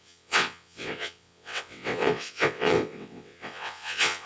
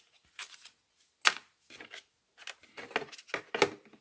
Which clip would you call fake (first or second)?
first